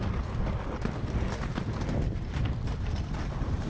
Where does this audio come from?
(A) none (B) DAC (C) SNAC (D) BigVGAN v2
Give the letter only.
A